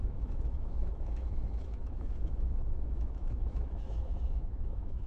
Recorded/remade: remade